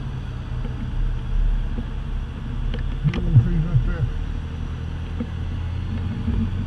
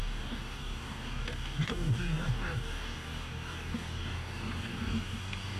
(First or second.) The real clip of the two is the first